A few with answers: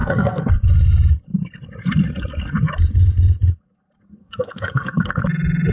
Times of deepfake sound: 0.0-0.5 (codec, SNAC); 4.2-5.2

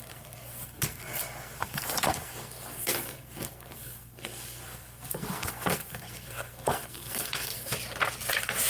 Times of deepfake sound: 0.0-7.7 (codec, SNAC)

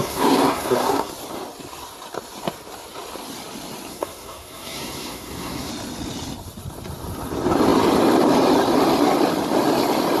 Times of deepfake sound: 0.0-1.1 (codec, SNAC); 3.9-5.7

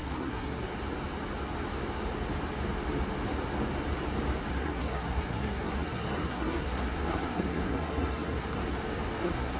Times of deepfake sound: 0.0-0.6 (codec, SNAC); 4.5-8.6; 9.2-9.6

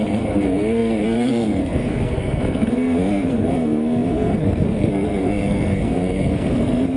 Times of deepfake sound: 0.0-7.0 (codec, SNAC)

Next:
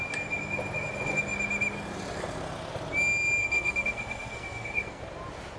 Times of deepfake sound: 3.4-5.0 (codec, SNAC)

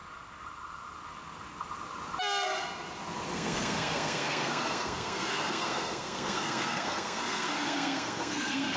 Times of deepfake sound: 3.3-8.8 (codec, SNAC)

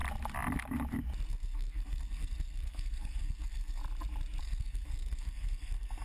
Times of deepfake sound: 1.3-3.8 (codec, SNAC); 4.4-6.0